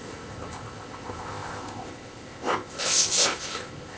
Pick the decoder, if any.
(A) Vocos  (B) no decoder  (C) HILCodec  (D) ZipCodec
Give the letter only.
D